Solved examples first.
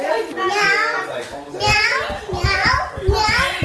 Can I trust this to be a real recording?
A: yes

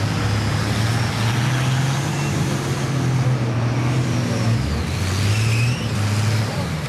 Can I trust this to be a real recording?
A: yes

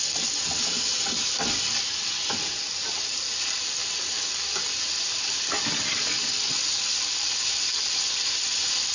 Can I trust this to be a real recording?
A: yes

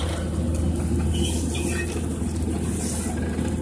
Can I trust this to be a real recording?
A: yes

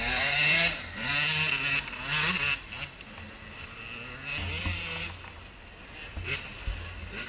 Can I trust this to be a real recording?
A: yes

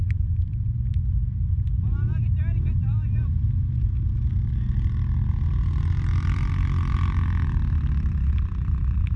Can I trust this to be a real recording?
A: yes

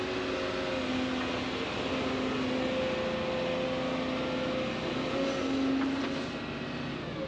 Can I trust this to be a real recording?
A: yes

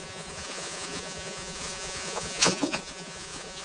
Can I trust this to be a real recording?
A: no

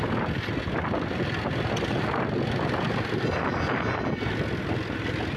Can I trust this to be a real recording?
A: yes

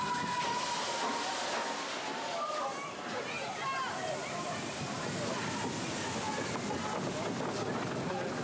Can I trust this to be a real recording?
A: yes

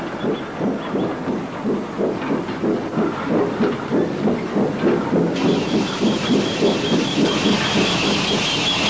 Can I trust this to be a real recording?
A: yes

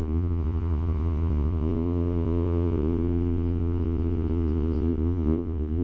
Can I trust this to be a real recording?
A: no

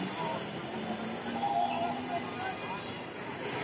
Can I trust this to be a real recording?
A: yes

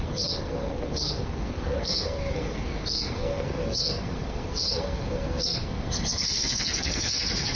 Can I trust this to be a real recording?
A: no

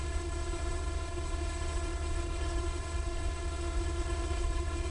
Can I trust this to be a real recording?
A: no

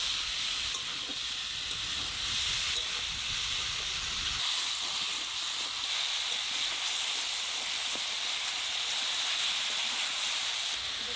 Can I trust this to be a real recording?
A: yes